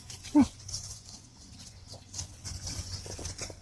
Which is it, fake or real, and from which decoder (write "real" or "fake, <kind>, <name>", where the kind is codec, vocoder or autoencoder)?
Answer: fake, vocoder, Vocos